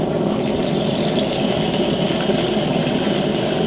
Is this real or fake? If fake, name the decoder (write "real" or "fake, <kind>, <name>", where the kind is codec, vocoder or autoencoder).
real